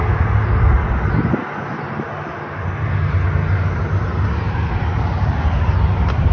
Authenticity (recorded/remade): recorded